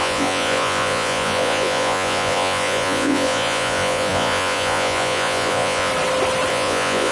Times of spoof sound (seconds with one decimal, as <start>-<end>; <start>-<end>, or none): 0.0-5.9; 6.5-7.1